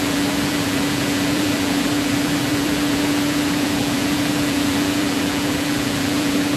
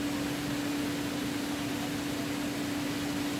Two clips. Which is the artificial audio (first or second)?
first